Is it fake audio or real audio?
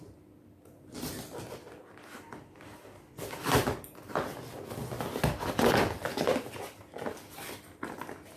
real